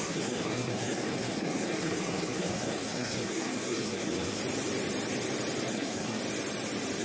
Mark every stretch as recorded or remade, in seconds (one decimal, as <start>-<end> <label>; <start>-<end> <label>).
0.0-4.4 remade; 4.4-5.7 recorded; 5.7-6.2 remade; 6.2-7.0 recorded